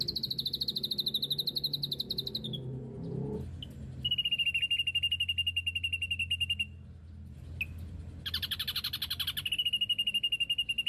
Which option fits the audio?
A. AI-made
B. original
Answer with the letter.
B